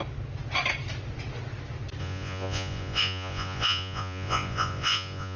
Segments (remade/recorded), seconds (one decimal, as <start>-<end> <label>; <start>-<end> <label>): 0.0-2.0 recorded; 2.0-5.4 remade